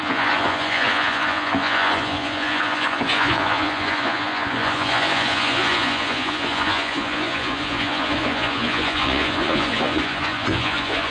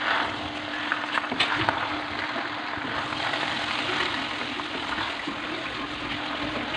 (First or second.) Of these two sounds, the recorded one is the second